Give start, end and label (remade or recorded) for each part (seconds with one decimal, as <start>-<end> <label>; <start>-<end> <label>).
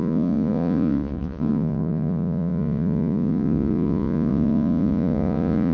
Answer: 0.0-5.7 remade